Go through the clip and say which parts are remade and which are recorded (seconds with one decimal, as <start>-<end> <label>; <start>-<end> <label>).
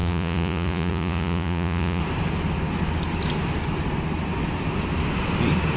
0.0-2.0 remade; 2.0-5.8 recorded